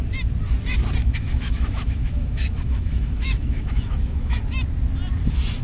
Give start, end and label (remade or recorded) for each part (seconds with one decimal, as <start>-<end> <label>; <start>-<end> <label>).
0.0-1.0 recorded; 1.0-4.4 remade; 4.4-5.6 recorded

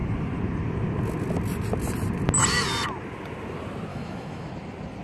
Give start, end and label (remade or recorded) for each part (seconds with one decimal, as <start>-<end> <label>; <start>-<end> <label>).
0.0-3.9 recorded; 3.9-4.5 remade; 4.5-5.0 recorded

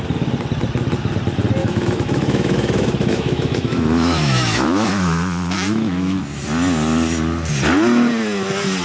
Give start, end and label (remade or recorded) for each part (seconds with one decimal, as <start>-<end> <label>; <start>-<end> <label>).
0.0-1.6 recorded; 1.6-6.2 remade; 6.2-8.8 recorded

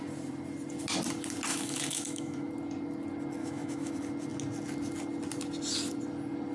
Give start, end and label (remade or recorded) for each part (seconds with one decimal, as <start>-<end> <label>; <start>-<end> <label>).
0.0-1.5 recorded; 1.5-2.5 remade; 2.5-3.4 recorded; 3.4-3.9 remade; 3.9-6.5 recorded

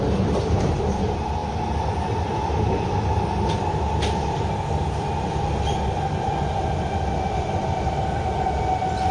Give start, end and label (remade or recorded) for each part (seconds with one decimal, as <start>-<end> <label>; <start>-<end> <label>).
0.0-9.1 recorded